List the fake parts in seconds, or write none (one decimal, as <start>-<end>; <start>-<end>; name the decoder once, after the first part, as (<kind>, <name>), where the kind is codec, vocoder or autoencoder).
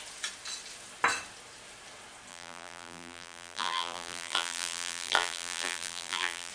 2.3-6.5 (vocoder, BigVGAN v2)